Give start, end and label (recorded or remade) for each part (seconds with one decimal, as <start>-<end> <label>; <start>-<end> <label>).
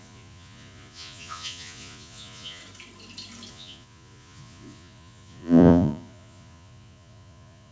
0.0-2.6 remade; 2.6-3.5 recorded; 3.5-7.7 remade